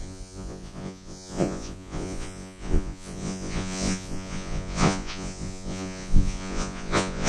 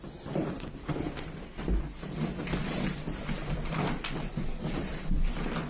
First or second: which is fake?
first